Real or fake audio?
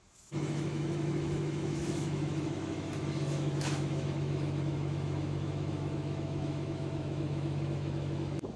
fake